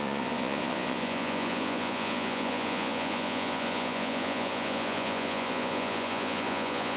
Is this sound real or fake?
fake